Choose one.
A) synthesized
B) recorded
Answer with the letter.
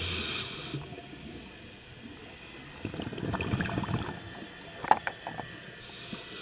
B